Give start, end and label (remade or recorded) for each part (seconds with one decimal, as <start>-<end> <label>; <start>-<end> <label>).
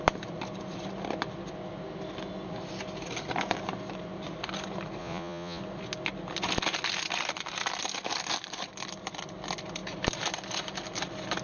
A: 0.0-5.0 recorded; 5.0-5.6 remade; 5.6-11.4 recorded